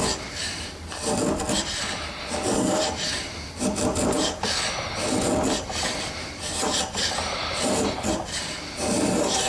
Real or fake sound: real